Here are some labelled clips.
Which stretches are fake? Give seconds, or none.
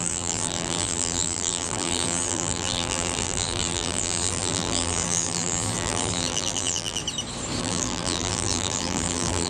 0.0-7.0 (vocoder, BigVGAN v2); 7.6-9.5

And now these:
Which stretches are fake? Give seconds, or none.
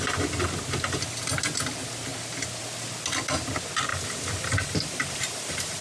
3.9-5.8 (vocoder, BigVGAN v2)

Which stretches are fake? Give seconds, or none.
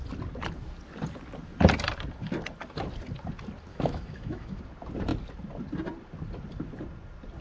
3.7-4.6 (autoencoder, DAC-VAE)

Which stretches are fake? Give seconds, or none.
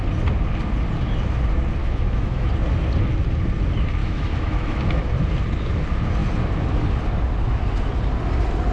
1.8-2.5 (autoencoder, DAC-VAE); 4.0-5.1